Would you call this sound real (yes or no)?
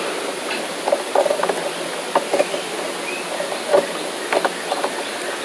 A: yes